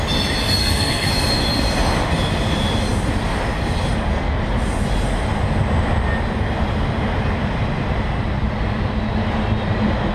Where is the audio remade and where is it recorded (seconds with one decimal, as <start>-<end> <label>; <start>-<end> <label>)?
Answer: 0.0-0.6 recorded; 0.6-1.1 remade; 1.1-10.1 recorded